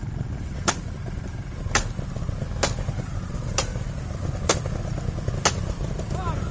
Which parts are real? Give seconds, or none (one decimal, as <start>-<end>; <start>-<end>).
0.7-3.1; 4.6-6.5